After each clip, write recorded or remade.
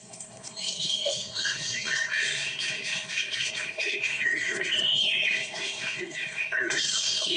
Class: remade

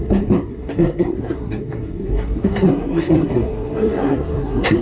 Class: remade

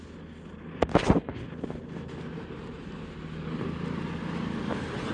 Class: recorded